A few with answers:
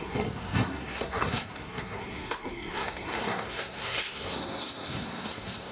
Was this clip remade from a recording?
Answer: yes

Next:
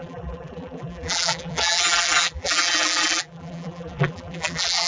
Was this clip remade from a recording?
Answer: yes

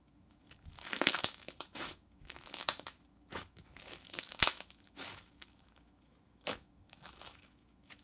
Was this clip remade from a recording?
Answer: yes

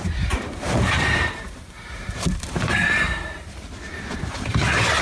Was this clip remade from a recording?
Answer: yes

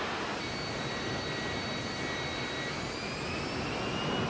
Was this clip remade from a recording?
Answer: no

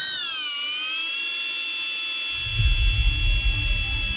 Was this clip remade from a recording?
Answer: no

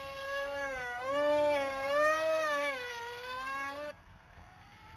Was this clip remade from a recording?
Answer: yes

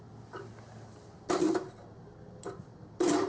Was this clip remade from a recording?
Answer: no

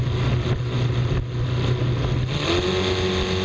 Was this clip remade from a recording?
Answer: no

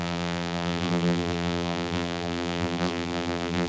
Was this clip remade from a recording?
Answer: yes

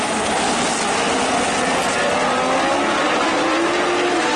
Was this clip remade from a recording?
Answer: no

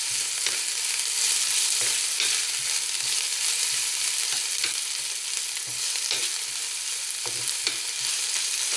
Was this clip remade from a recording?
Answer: no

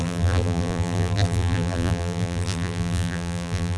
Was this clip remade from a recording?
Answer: yes